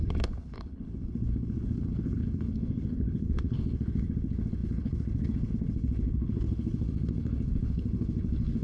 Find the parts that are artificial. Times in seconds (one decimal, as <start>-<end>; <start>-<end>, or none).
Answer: 0.0-8.6